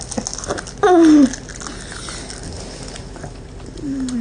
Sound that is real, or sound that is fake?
real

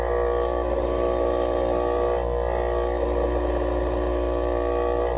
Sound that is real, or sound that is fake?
real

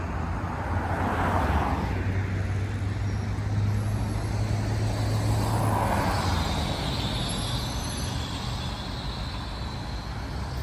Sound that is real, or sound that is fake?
real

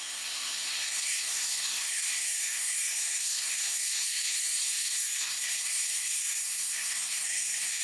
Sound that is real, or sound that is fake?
fake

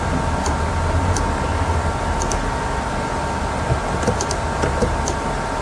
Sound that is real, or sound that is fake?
real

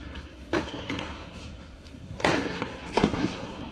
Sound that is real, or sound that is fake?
fake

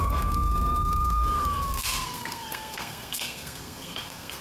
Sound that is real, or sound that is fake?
fake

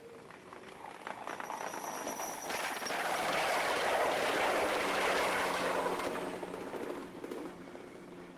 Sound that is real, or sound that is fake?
real